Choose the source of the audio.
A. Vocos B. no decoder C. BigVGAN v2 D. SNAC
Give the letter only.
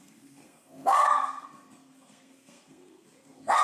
D